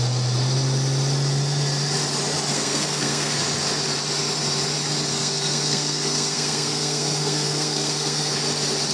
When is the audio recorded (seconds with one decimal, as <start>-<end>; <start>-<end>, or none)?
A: 0.0-2.5; 3.4-5.1; 8.4-8.9